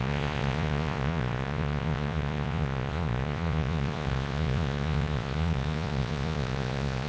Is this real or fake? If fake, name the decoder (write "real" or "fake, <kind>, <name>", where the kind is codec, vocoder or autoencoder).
fake, vocoder, Vocos